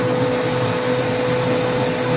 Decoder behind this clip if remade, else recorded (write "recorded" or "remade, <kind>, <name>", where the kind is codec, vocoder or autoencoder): recorded